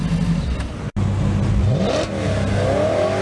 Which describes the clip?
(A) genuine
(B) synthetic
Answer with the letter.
A